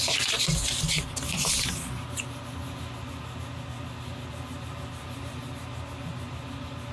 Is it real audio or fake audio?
real